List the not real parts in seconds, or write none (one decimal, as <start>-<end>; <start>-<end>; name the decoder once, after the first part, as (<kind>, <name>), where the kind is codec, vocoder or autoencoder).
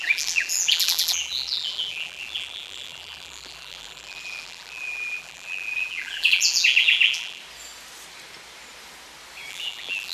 0.0-7.4 (vocoder, BigVGAN v2); 9.5-10.1